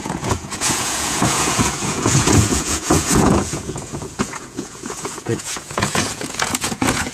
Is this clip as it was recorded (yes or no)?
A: no